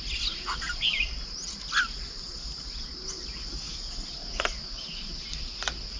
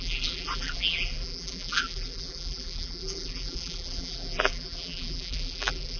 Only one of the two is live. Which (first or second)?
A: first